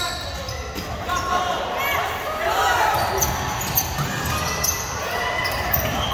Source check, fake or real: real